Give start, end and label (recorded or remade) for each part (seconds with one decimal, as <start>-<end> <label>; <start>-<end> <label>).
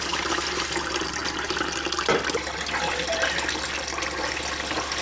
0.0-5.0 recorded